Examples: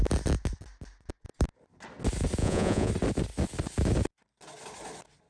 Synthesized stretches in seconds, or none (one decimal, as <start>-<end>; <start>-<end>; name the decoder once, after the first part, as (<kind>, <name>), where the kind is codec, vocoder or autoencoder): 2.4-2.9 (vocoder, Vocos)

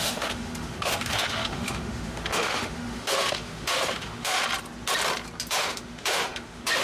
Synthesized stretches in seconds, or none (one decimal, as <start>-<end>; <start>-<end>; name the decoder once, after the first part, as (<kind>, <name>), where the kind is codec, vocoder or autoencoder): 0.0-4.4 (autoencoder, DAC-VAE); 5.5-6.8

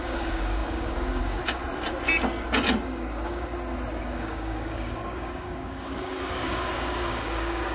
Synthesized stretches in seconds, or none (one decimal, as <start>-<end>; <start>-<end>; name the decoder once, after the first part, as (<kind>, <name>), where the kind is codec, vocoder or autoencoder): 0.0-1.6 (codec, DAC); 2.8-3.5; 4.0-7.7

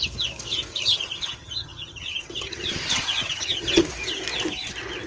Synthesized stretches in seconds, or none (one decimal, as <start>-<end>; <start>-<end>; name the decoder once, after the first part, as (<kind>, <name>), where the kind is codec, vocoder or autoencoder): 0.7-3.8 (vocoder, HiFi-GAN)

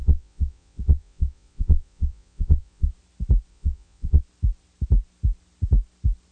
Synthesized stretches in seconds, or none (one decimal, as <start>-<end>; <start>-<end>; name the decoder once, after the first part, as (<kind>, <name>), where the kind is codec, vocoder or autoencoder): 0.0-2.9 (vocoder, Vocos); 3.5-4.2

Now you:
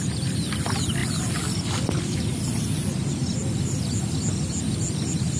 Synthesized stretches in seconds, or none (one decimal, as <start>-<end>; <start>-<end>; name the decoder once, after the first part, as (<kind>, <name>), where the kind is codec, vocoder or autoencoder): none